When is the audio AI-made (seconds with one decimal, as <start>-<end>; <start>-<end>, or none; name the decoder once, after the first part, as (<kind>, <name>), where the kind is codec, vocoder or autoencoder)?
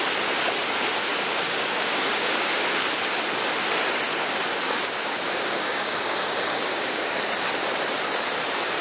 1.1-2.7 (codec, DAC); 4.1-7.2